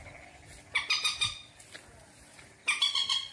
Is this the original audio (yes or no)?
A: yes